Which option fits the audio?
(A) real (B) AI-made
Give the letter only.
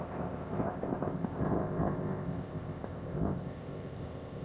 B